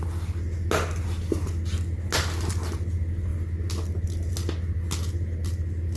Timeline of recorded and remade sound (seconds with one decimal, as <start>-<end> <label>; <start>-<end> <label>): 0.0-6.0 recorded